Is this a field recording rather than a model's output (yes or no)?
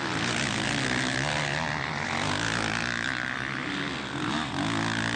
yes